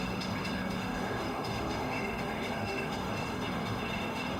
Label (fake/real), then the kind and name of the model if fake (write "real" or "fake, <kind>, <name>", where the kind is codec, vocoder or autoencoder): fake, autoencoder, DAC-VAE